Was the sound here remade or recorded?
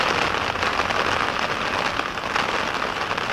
recorded